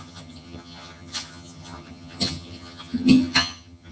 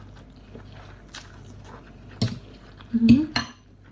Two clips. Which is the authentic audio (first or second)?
second